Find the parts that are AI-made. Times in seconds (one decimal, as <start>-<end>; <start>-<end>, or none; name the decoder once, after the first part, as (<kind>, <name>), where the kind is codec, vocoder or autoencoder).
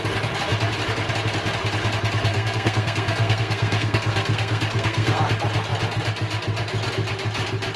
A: 2.3-5.2 (codec, SNAC)